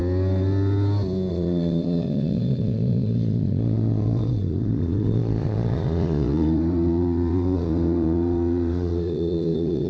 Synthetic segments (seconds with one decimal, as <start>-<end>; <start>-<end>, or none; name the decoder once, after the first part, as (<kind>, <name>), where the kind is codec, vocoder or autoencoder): 1.3-9.9 (vocoder, Vocos)